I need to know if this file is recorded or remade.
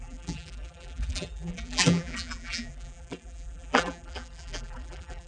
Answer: remade